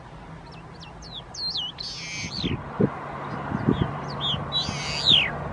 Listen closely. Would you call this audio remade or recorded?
recorded